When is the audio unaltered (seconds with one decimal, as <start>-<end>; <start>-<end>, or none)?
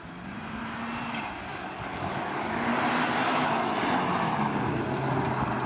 0.0-1.5; 2.8-5.7